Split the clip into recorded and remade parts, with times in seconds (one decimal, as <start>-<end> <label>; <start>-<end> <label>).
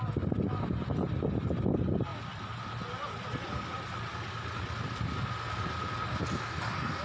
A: 0.0-7.0 recorded